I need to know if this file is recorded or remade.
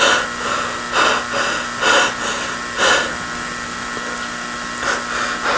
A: recorded